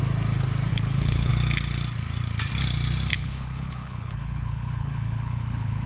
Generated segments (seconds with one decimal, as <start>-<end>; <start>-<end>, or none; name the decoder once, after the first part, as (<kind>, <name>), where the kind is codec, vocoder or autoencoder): 0.7-1.3 (codec, HILCodec); 3.1-5.9